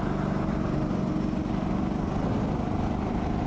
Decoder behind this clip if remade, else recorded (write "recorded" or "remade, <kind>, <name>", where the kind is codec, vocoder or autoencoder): recorded